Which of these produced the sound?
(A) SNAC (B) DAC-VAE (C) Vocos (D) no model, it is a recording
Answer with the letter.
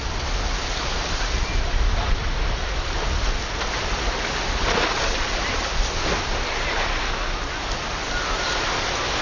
D